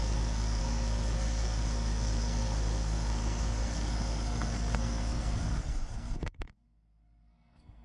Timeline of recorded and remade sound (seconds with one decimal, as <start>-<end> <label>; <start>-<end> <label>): 0.0-7.8 remade